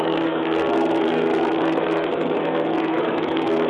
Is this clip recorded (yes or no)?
no